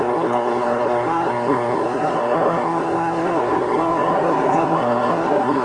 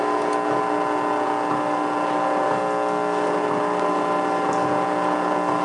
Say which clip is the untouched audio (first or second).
second